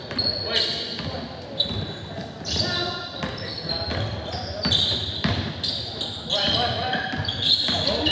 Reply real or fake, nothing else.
real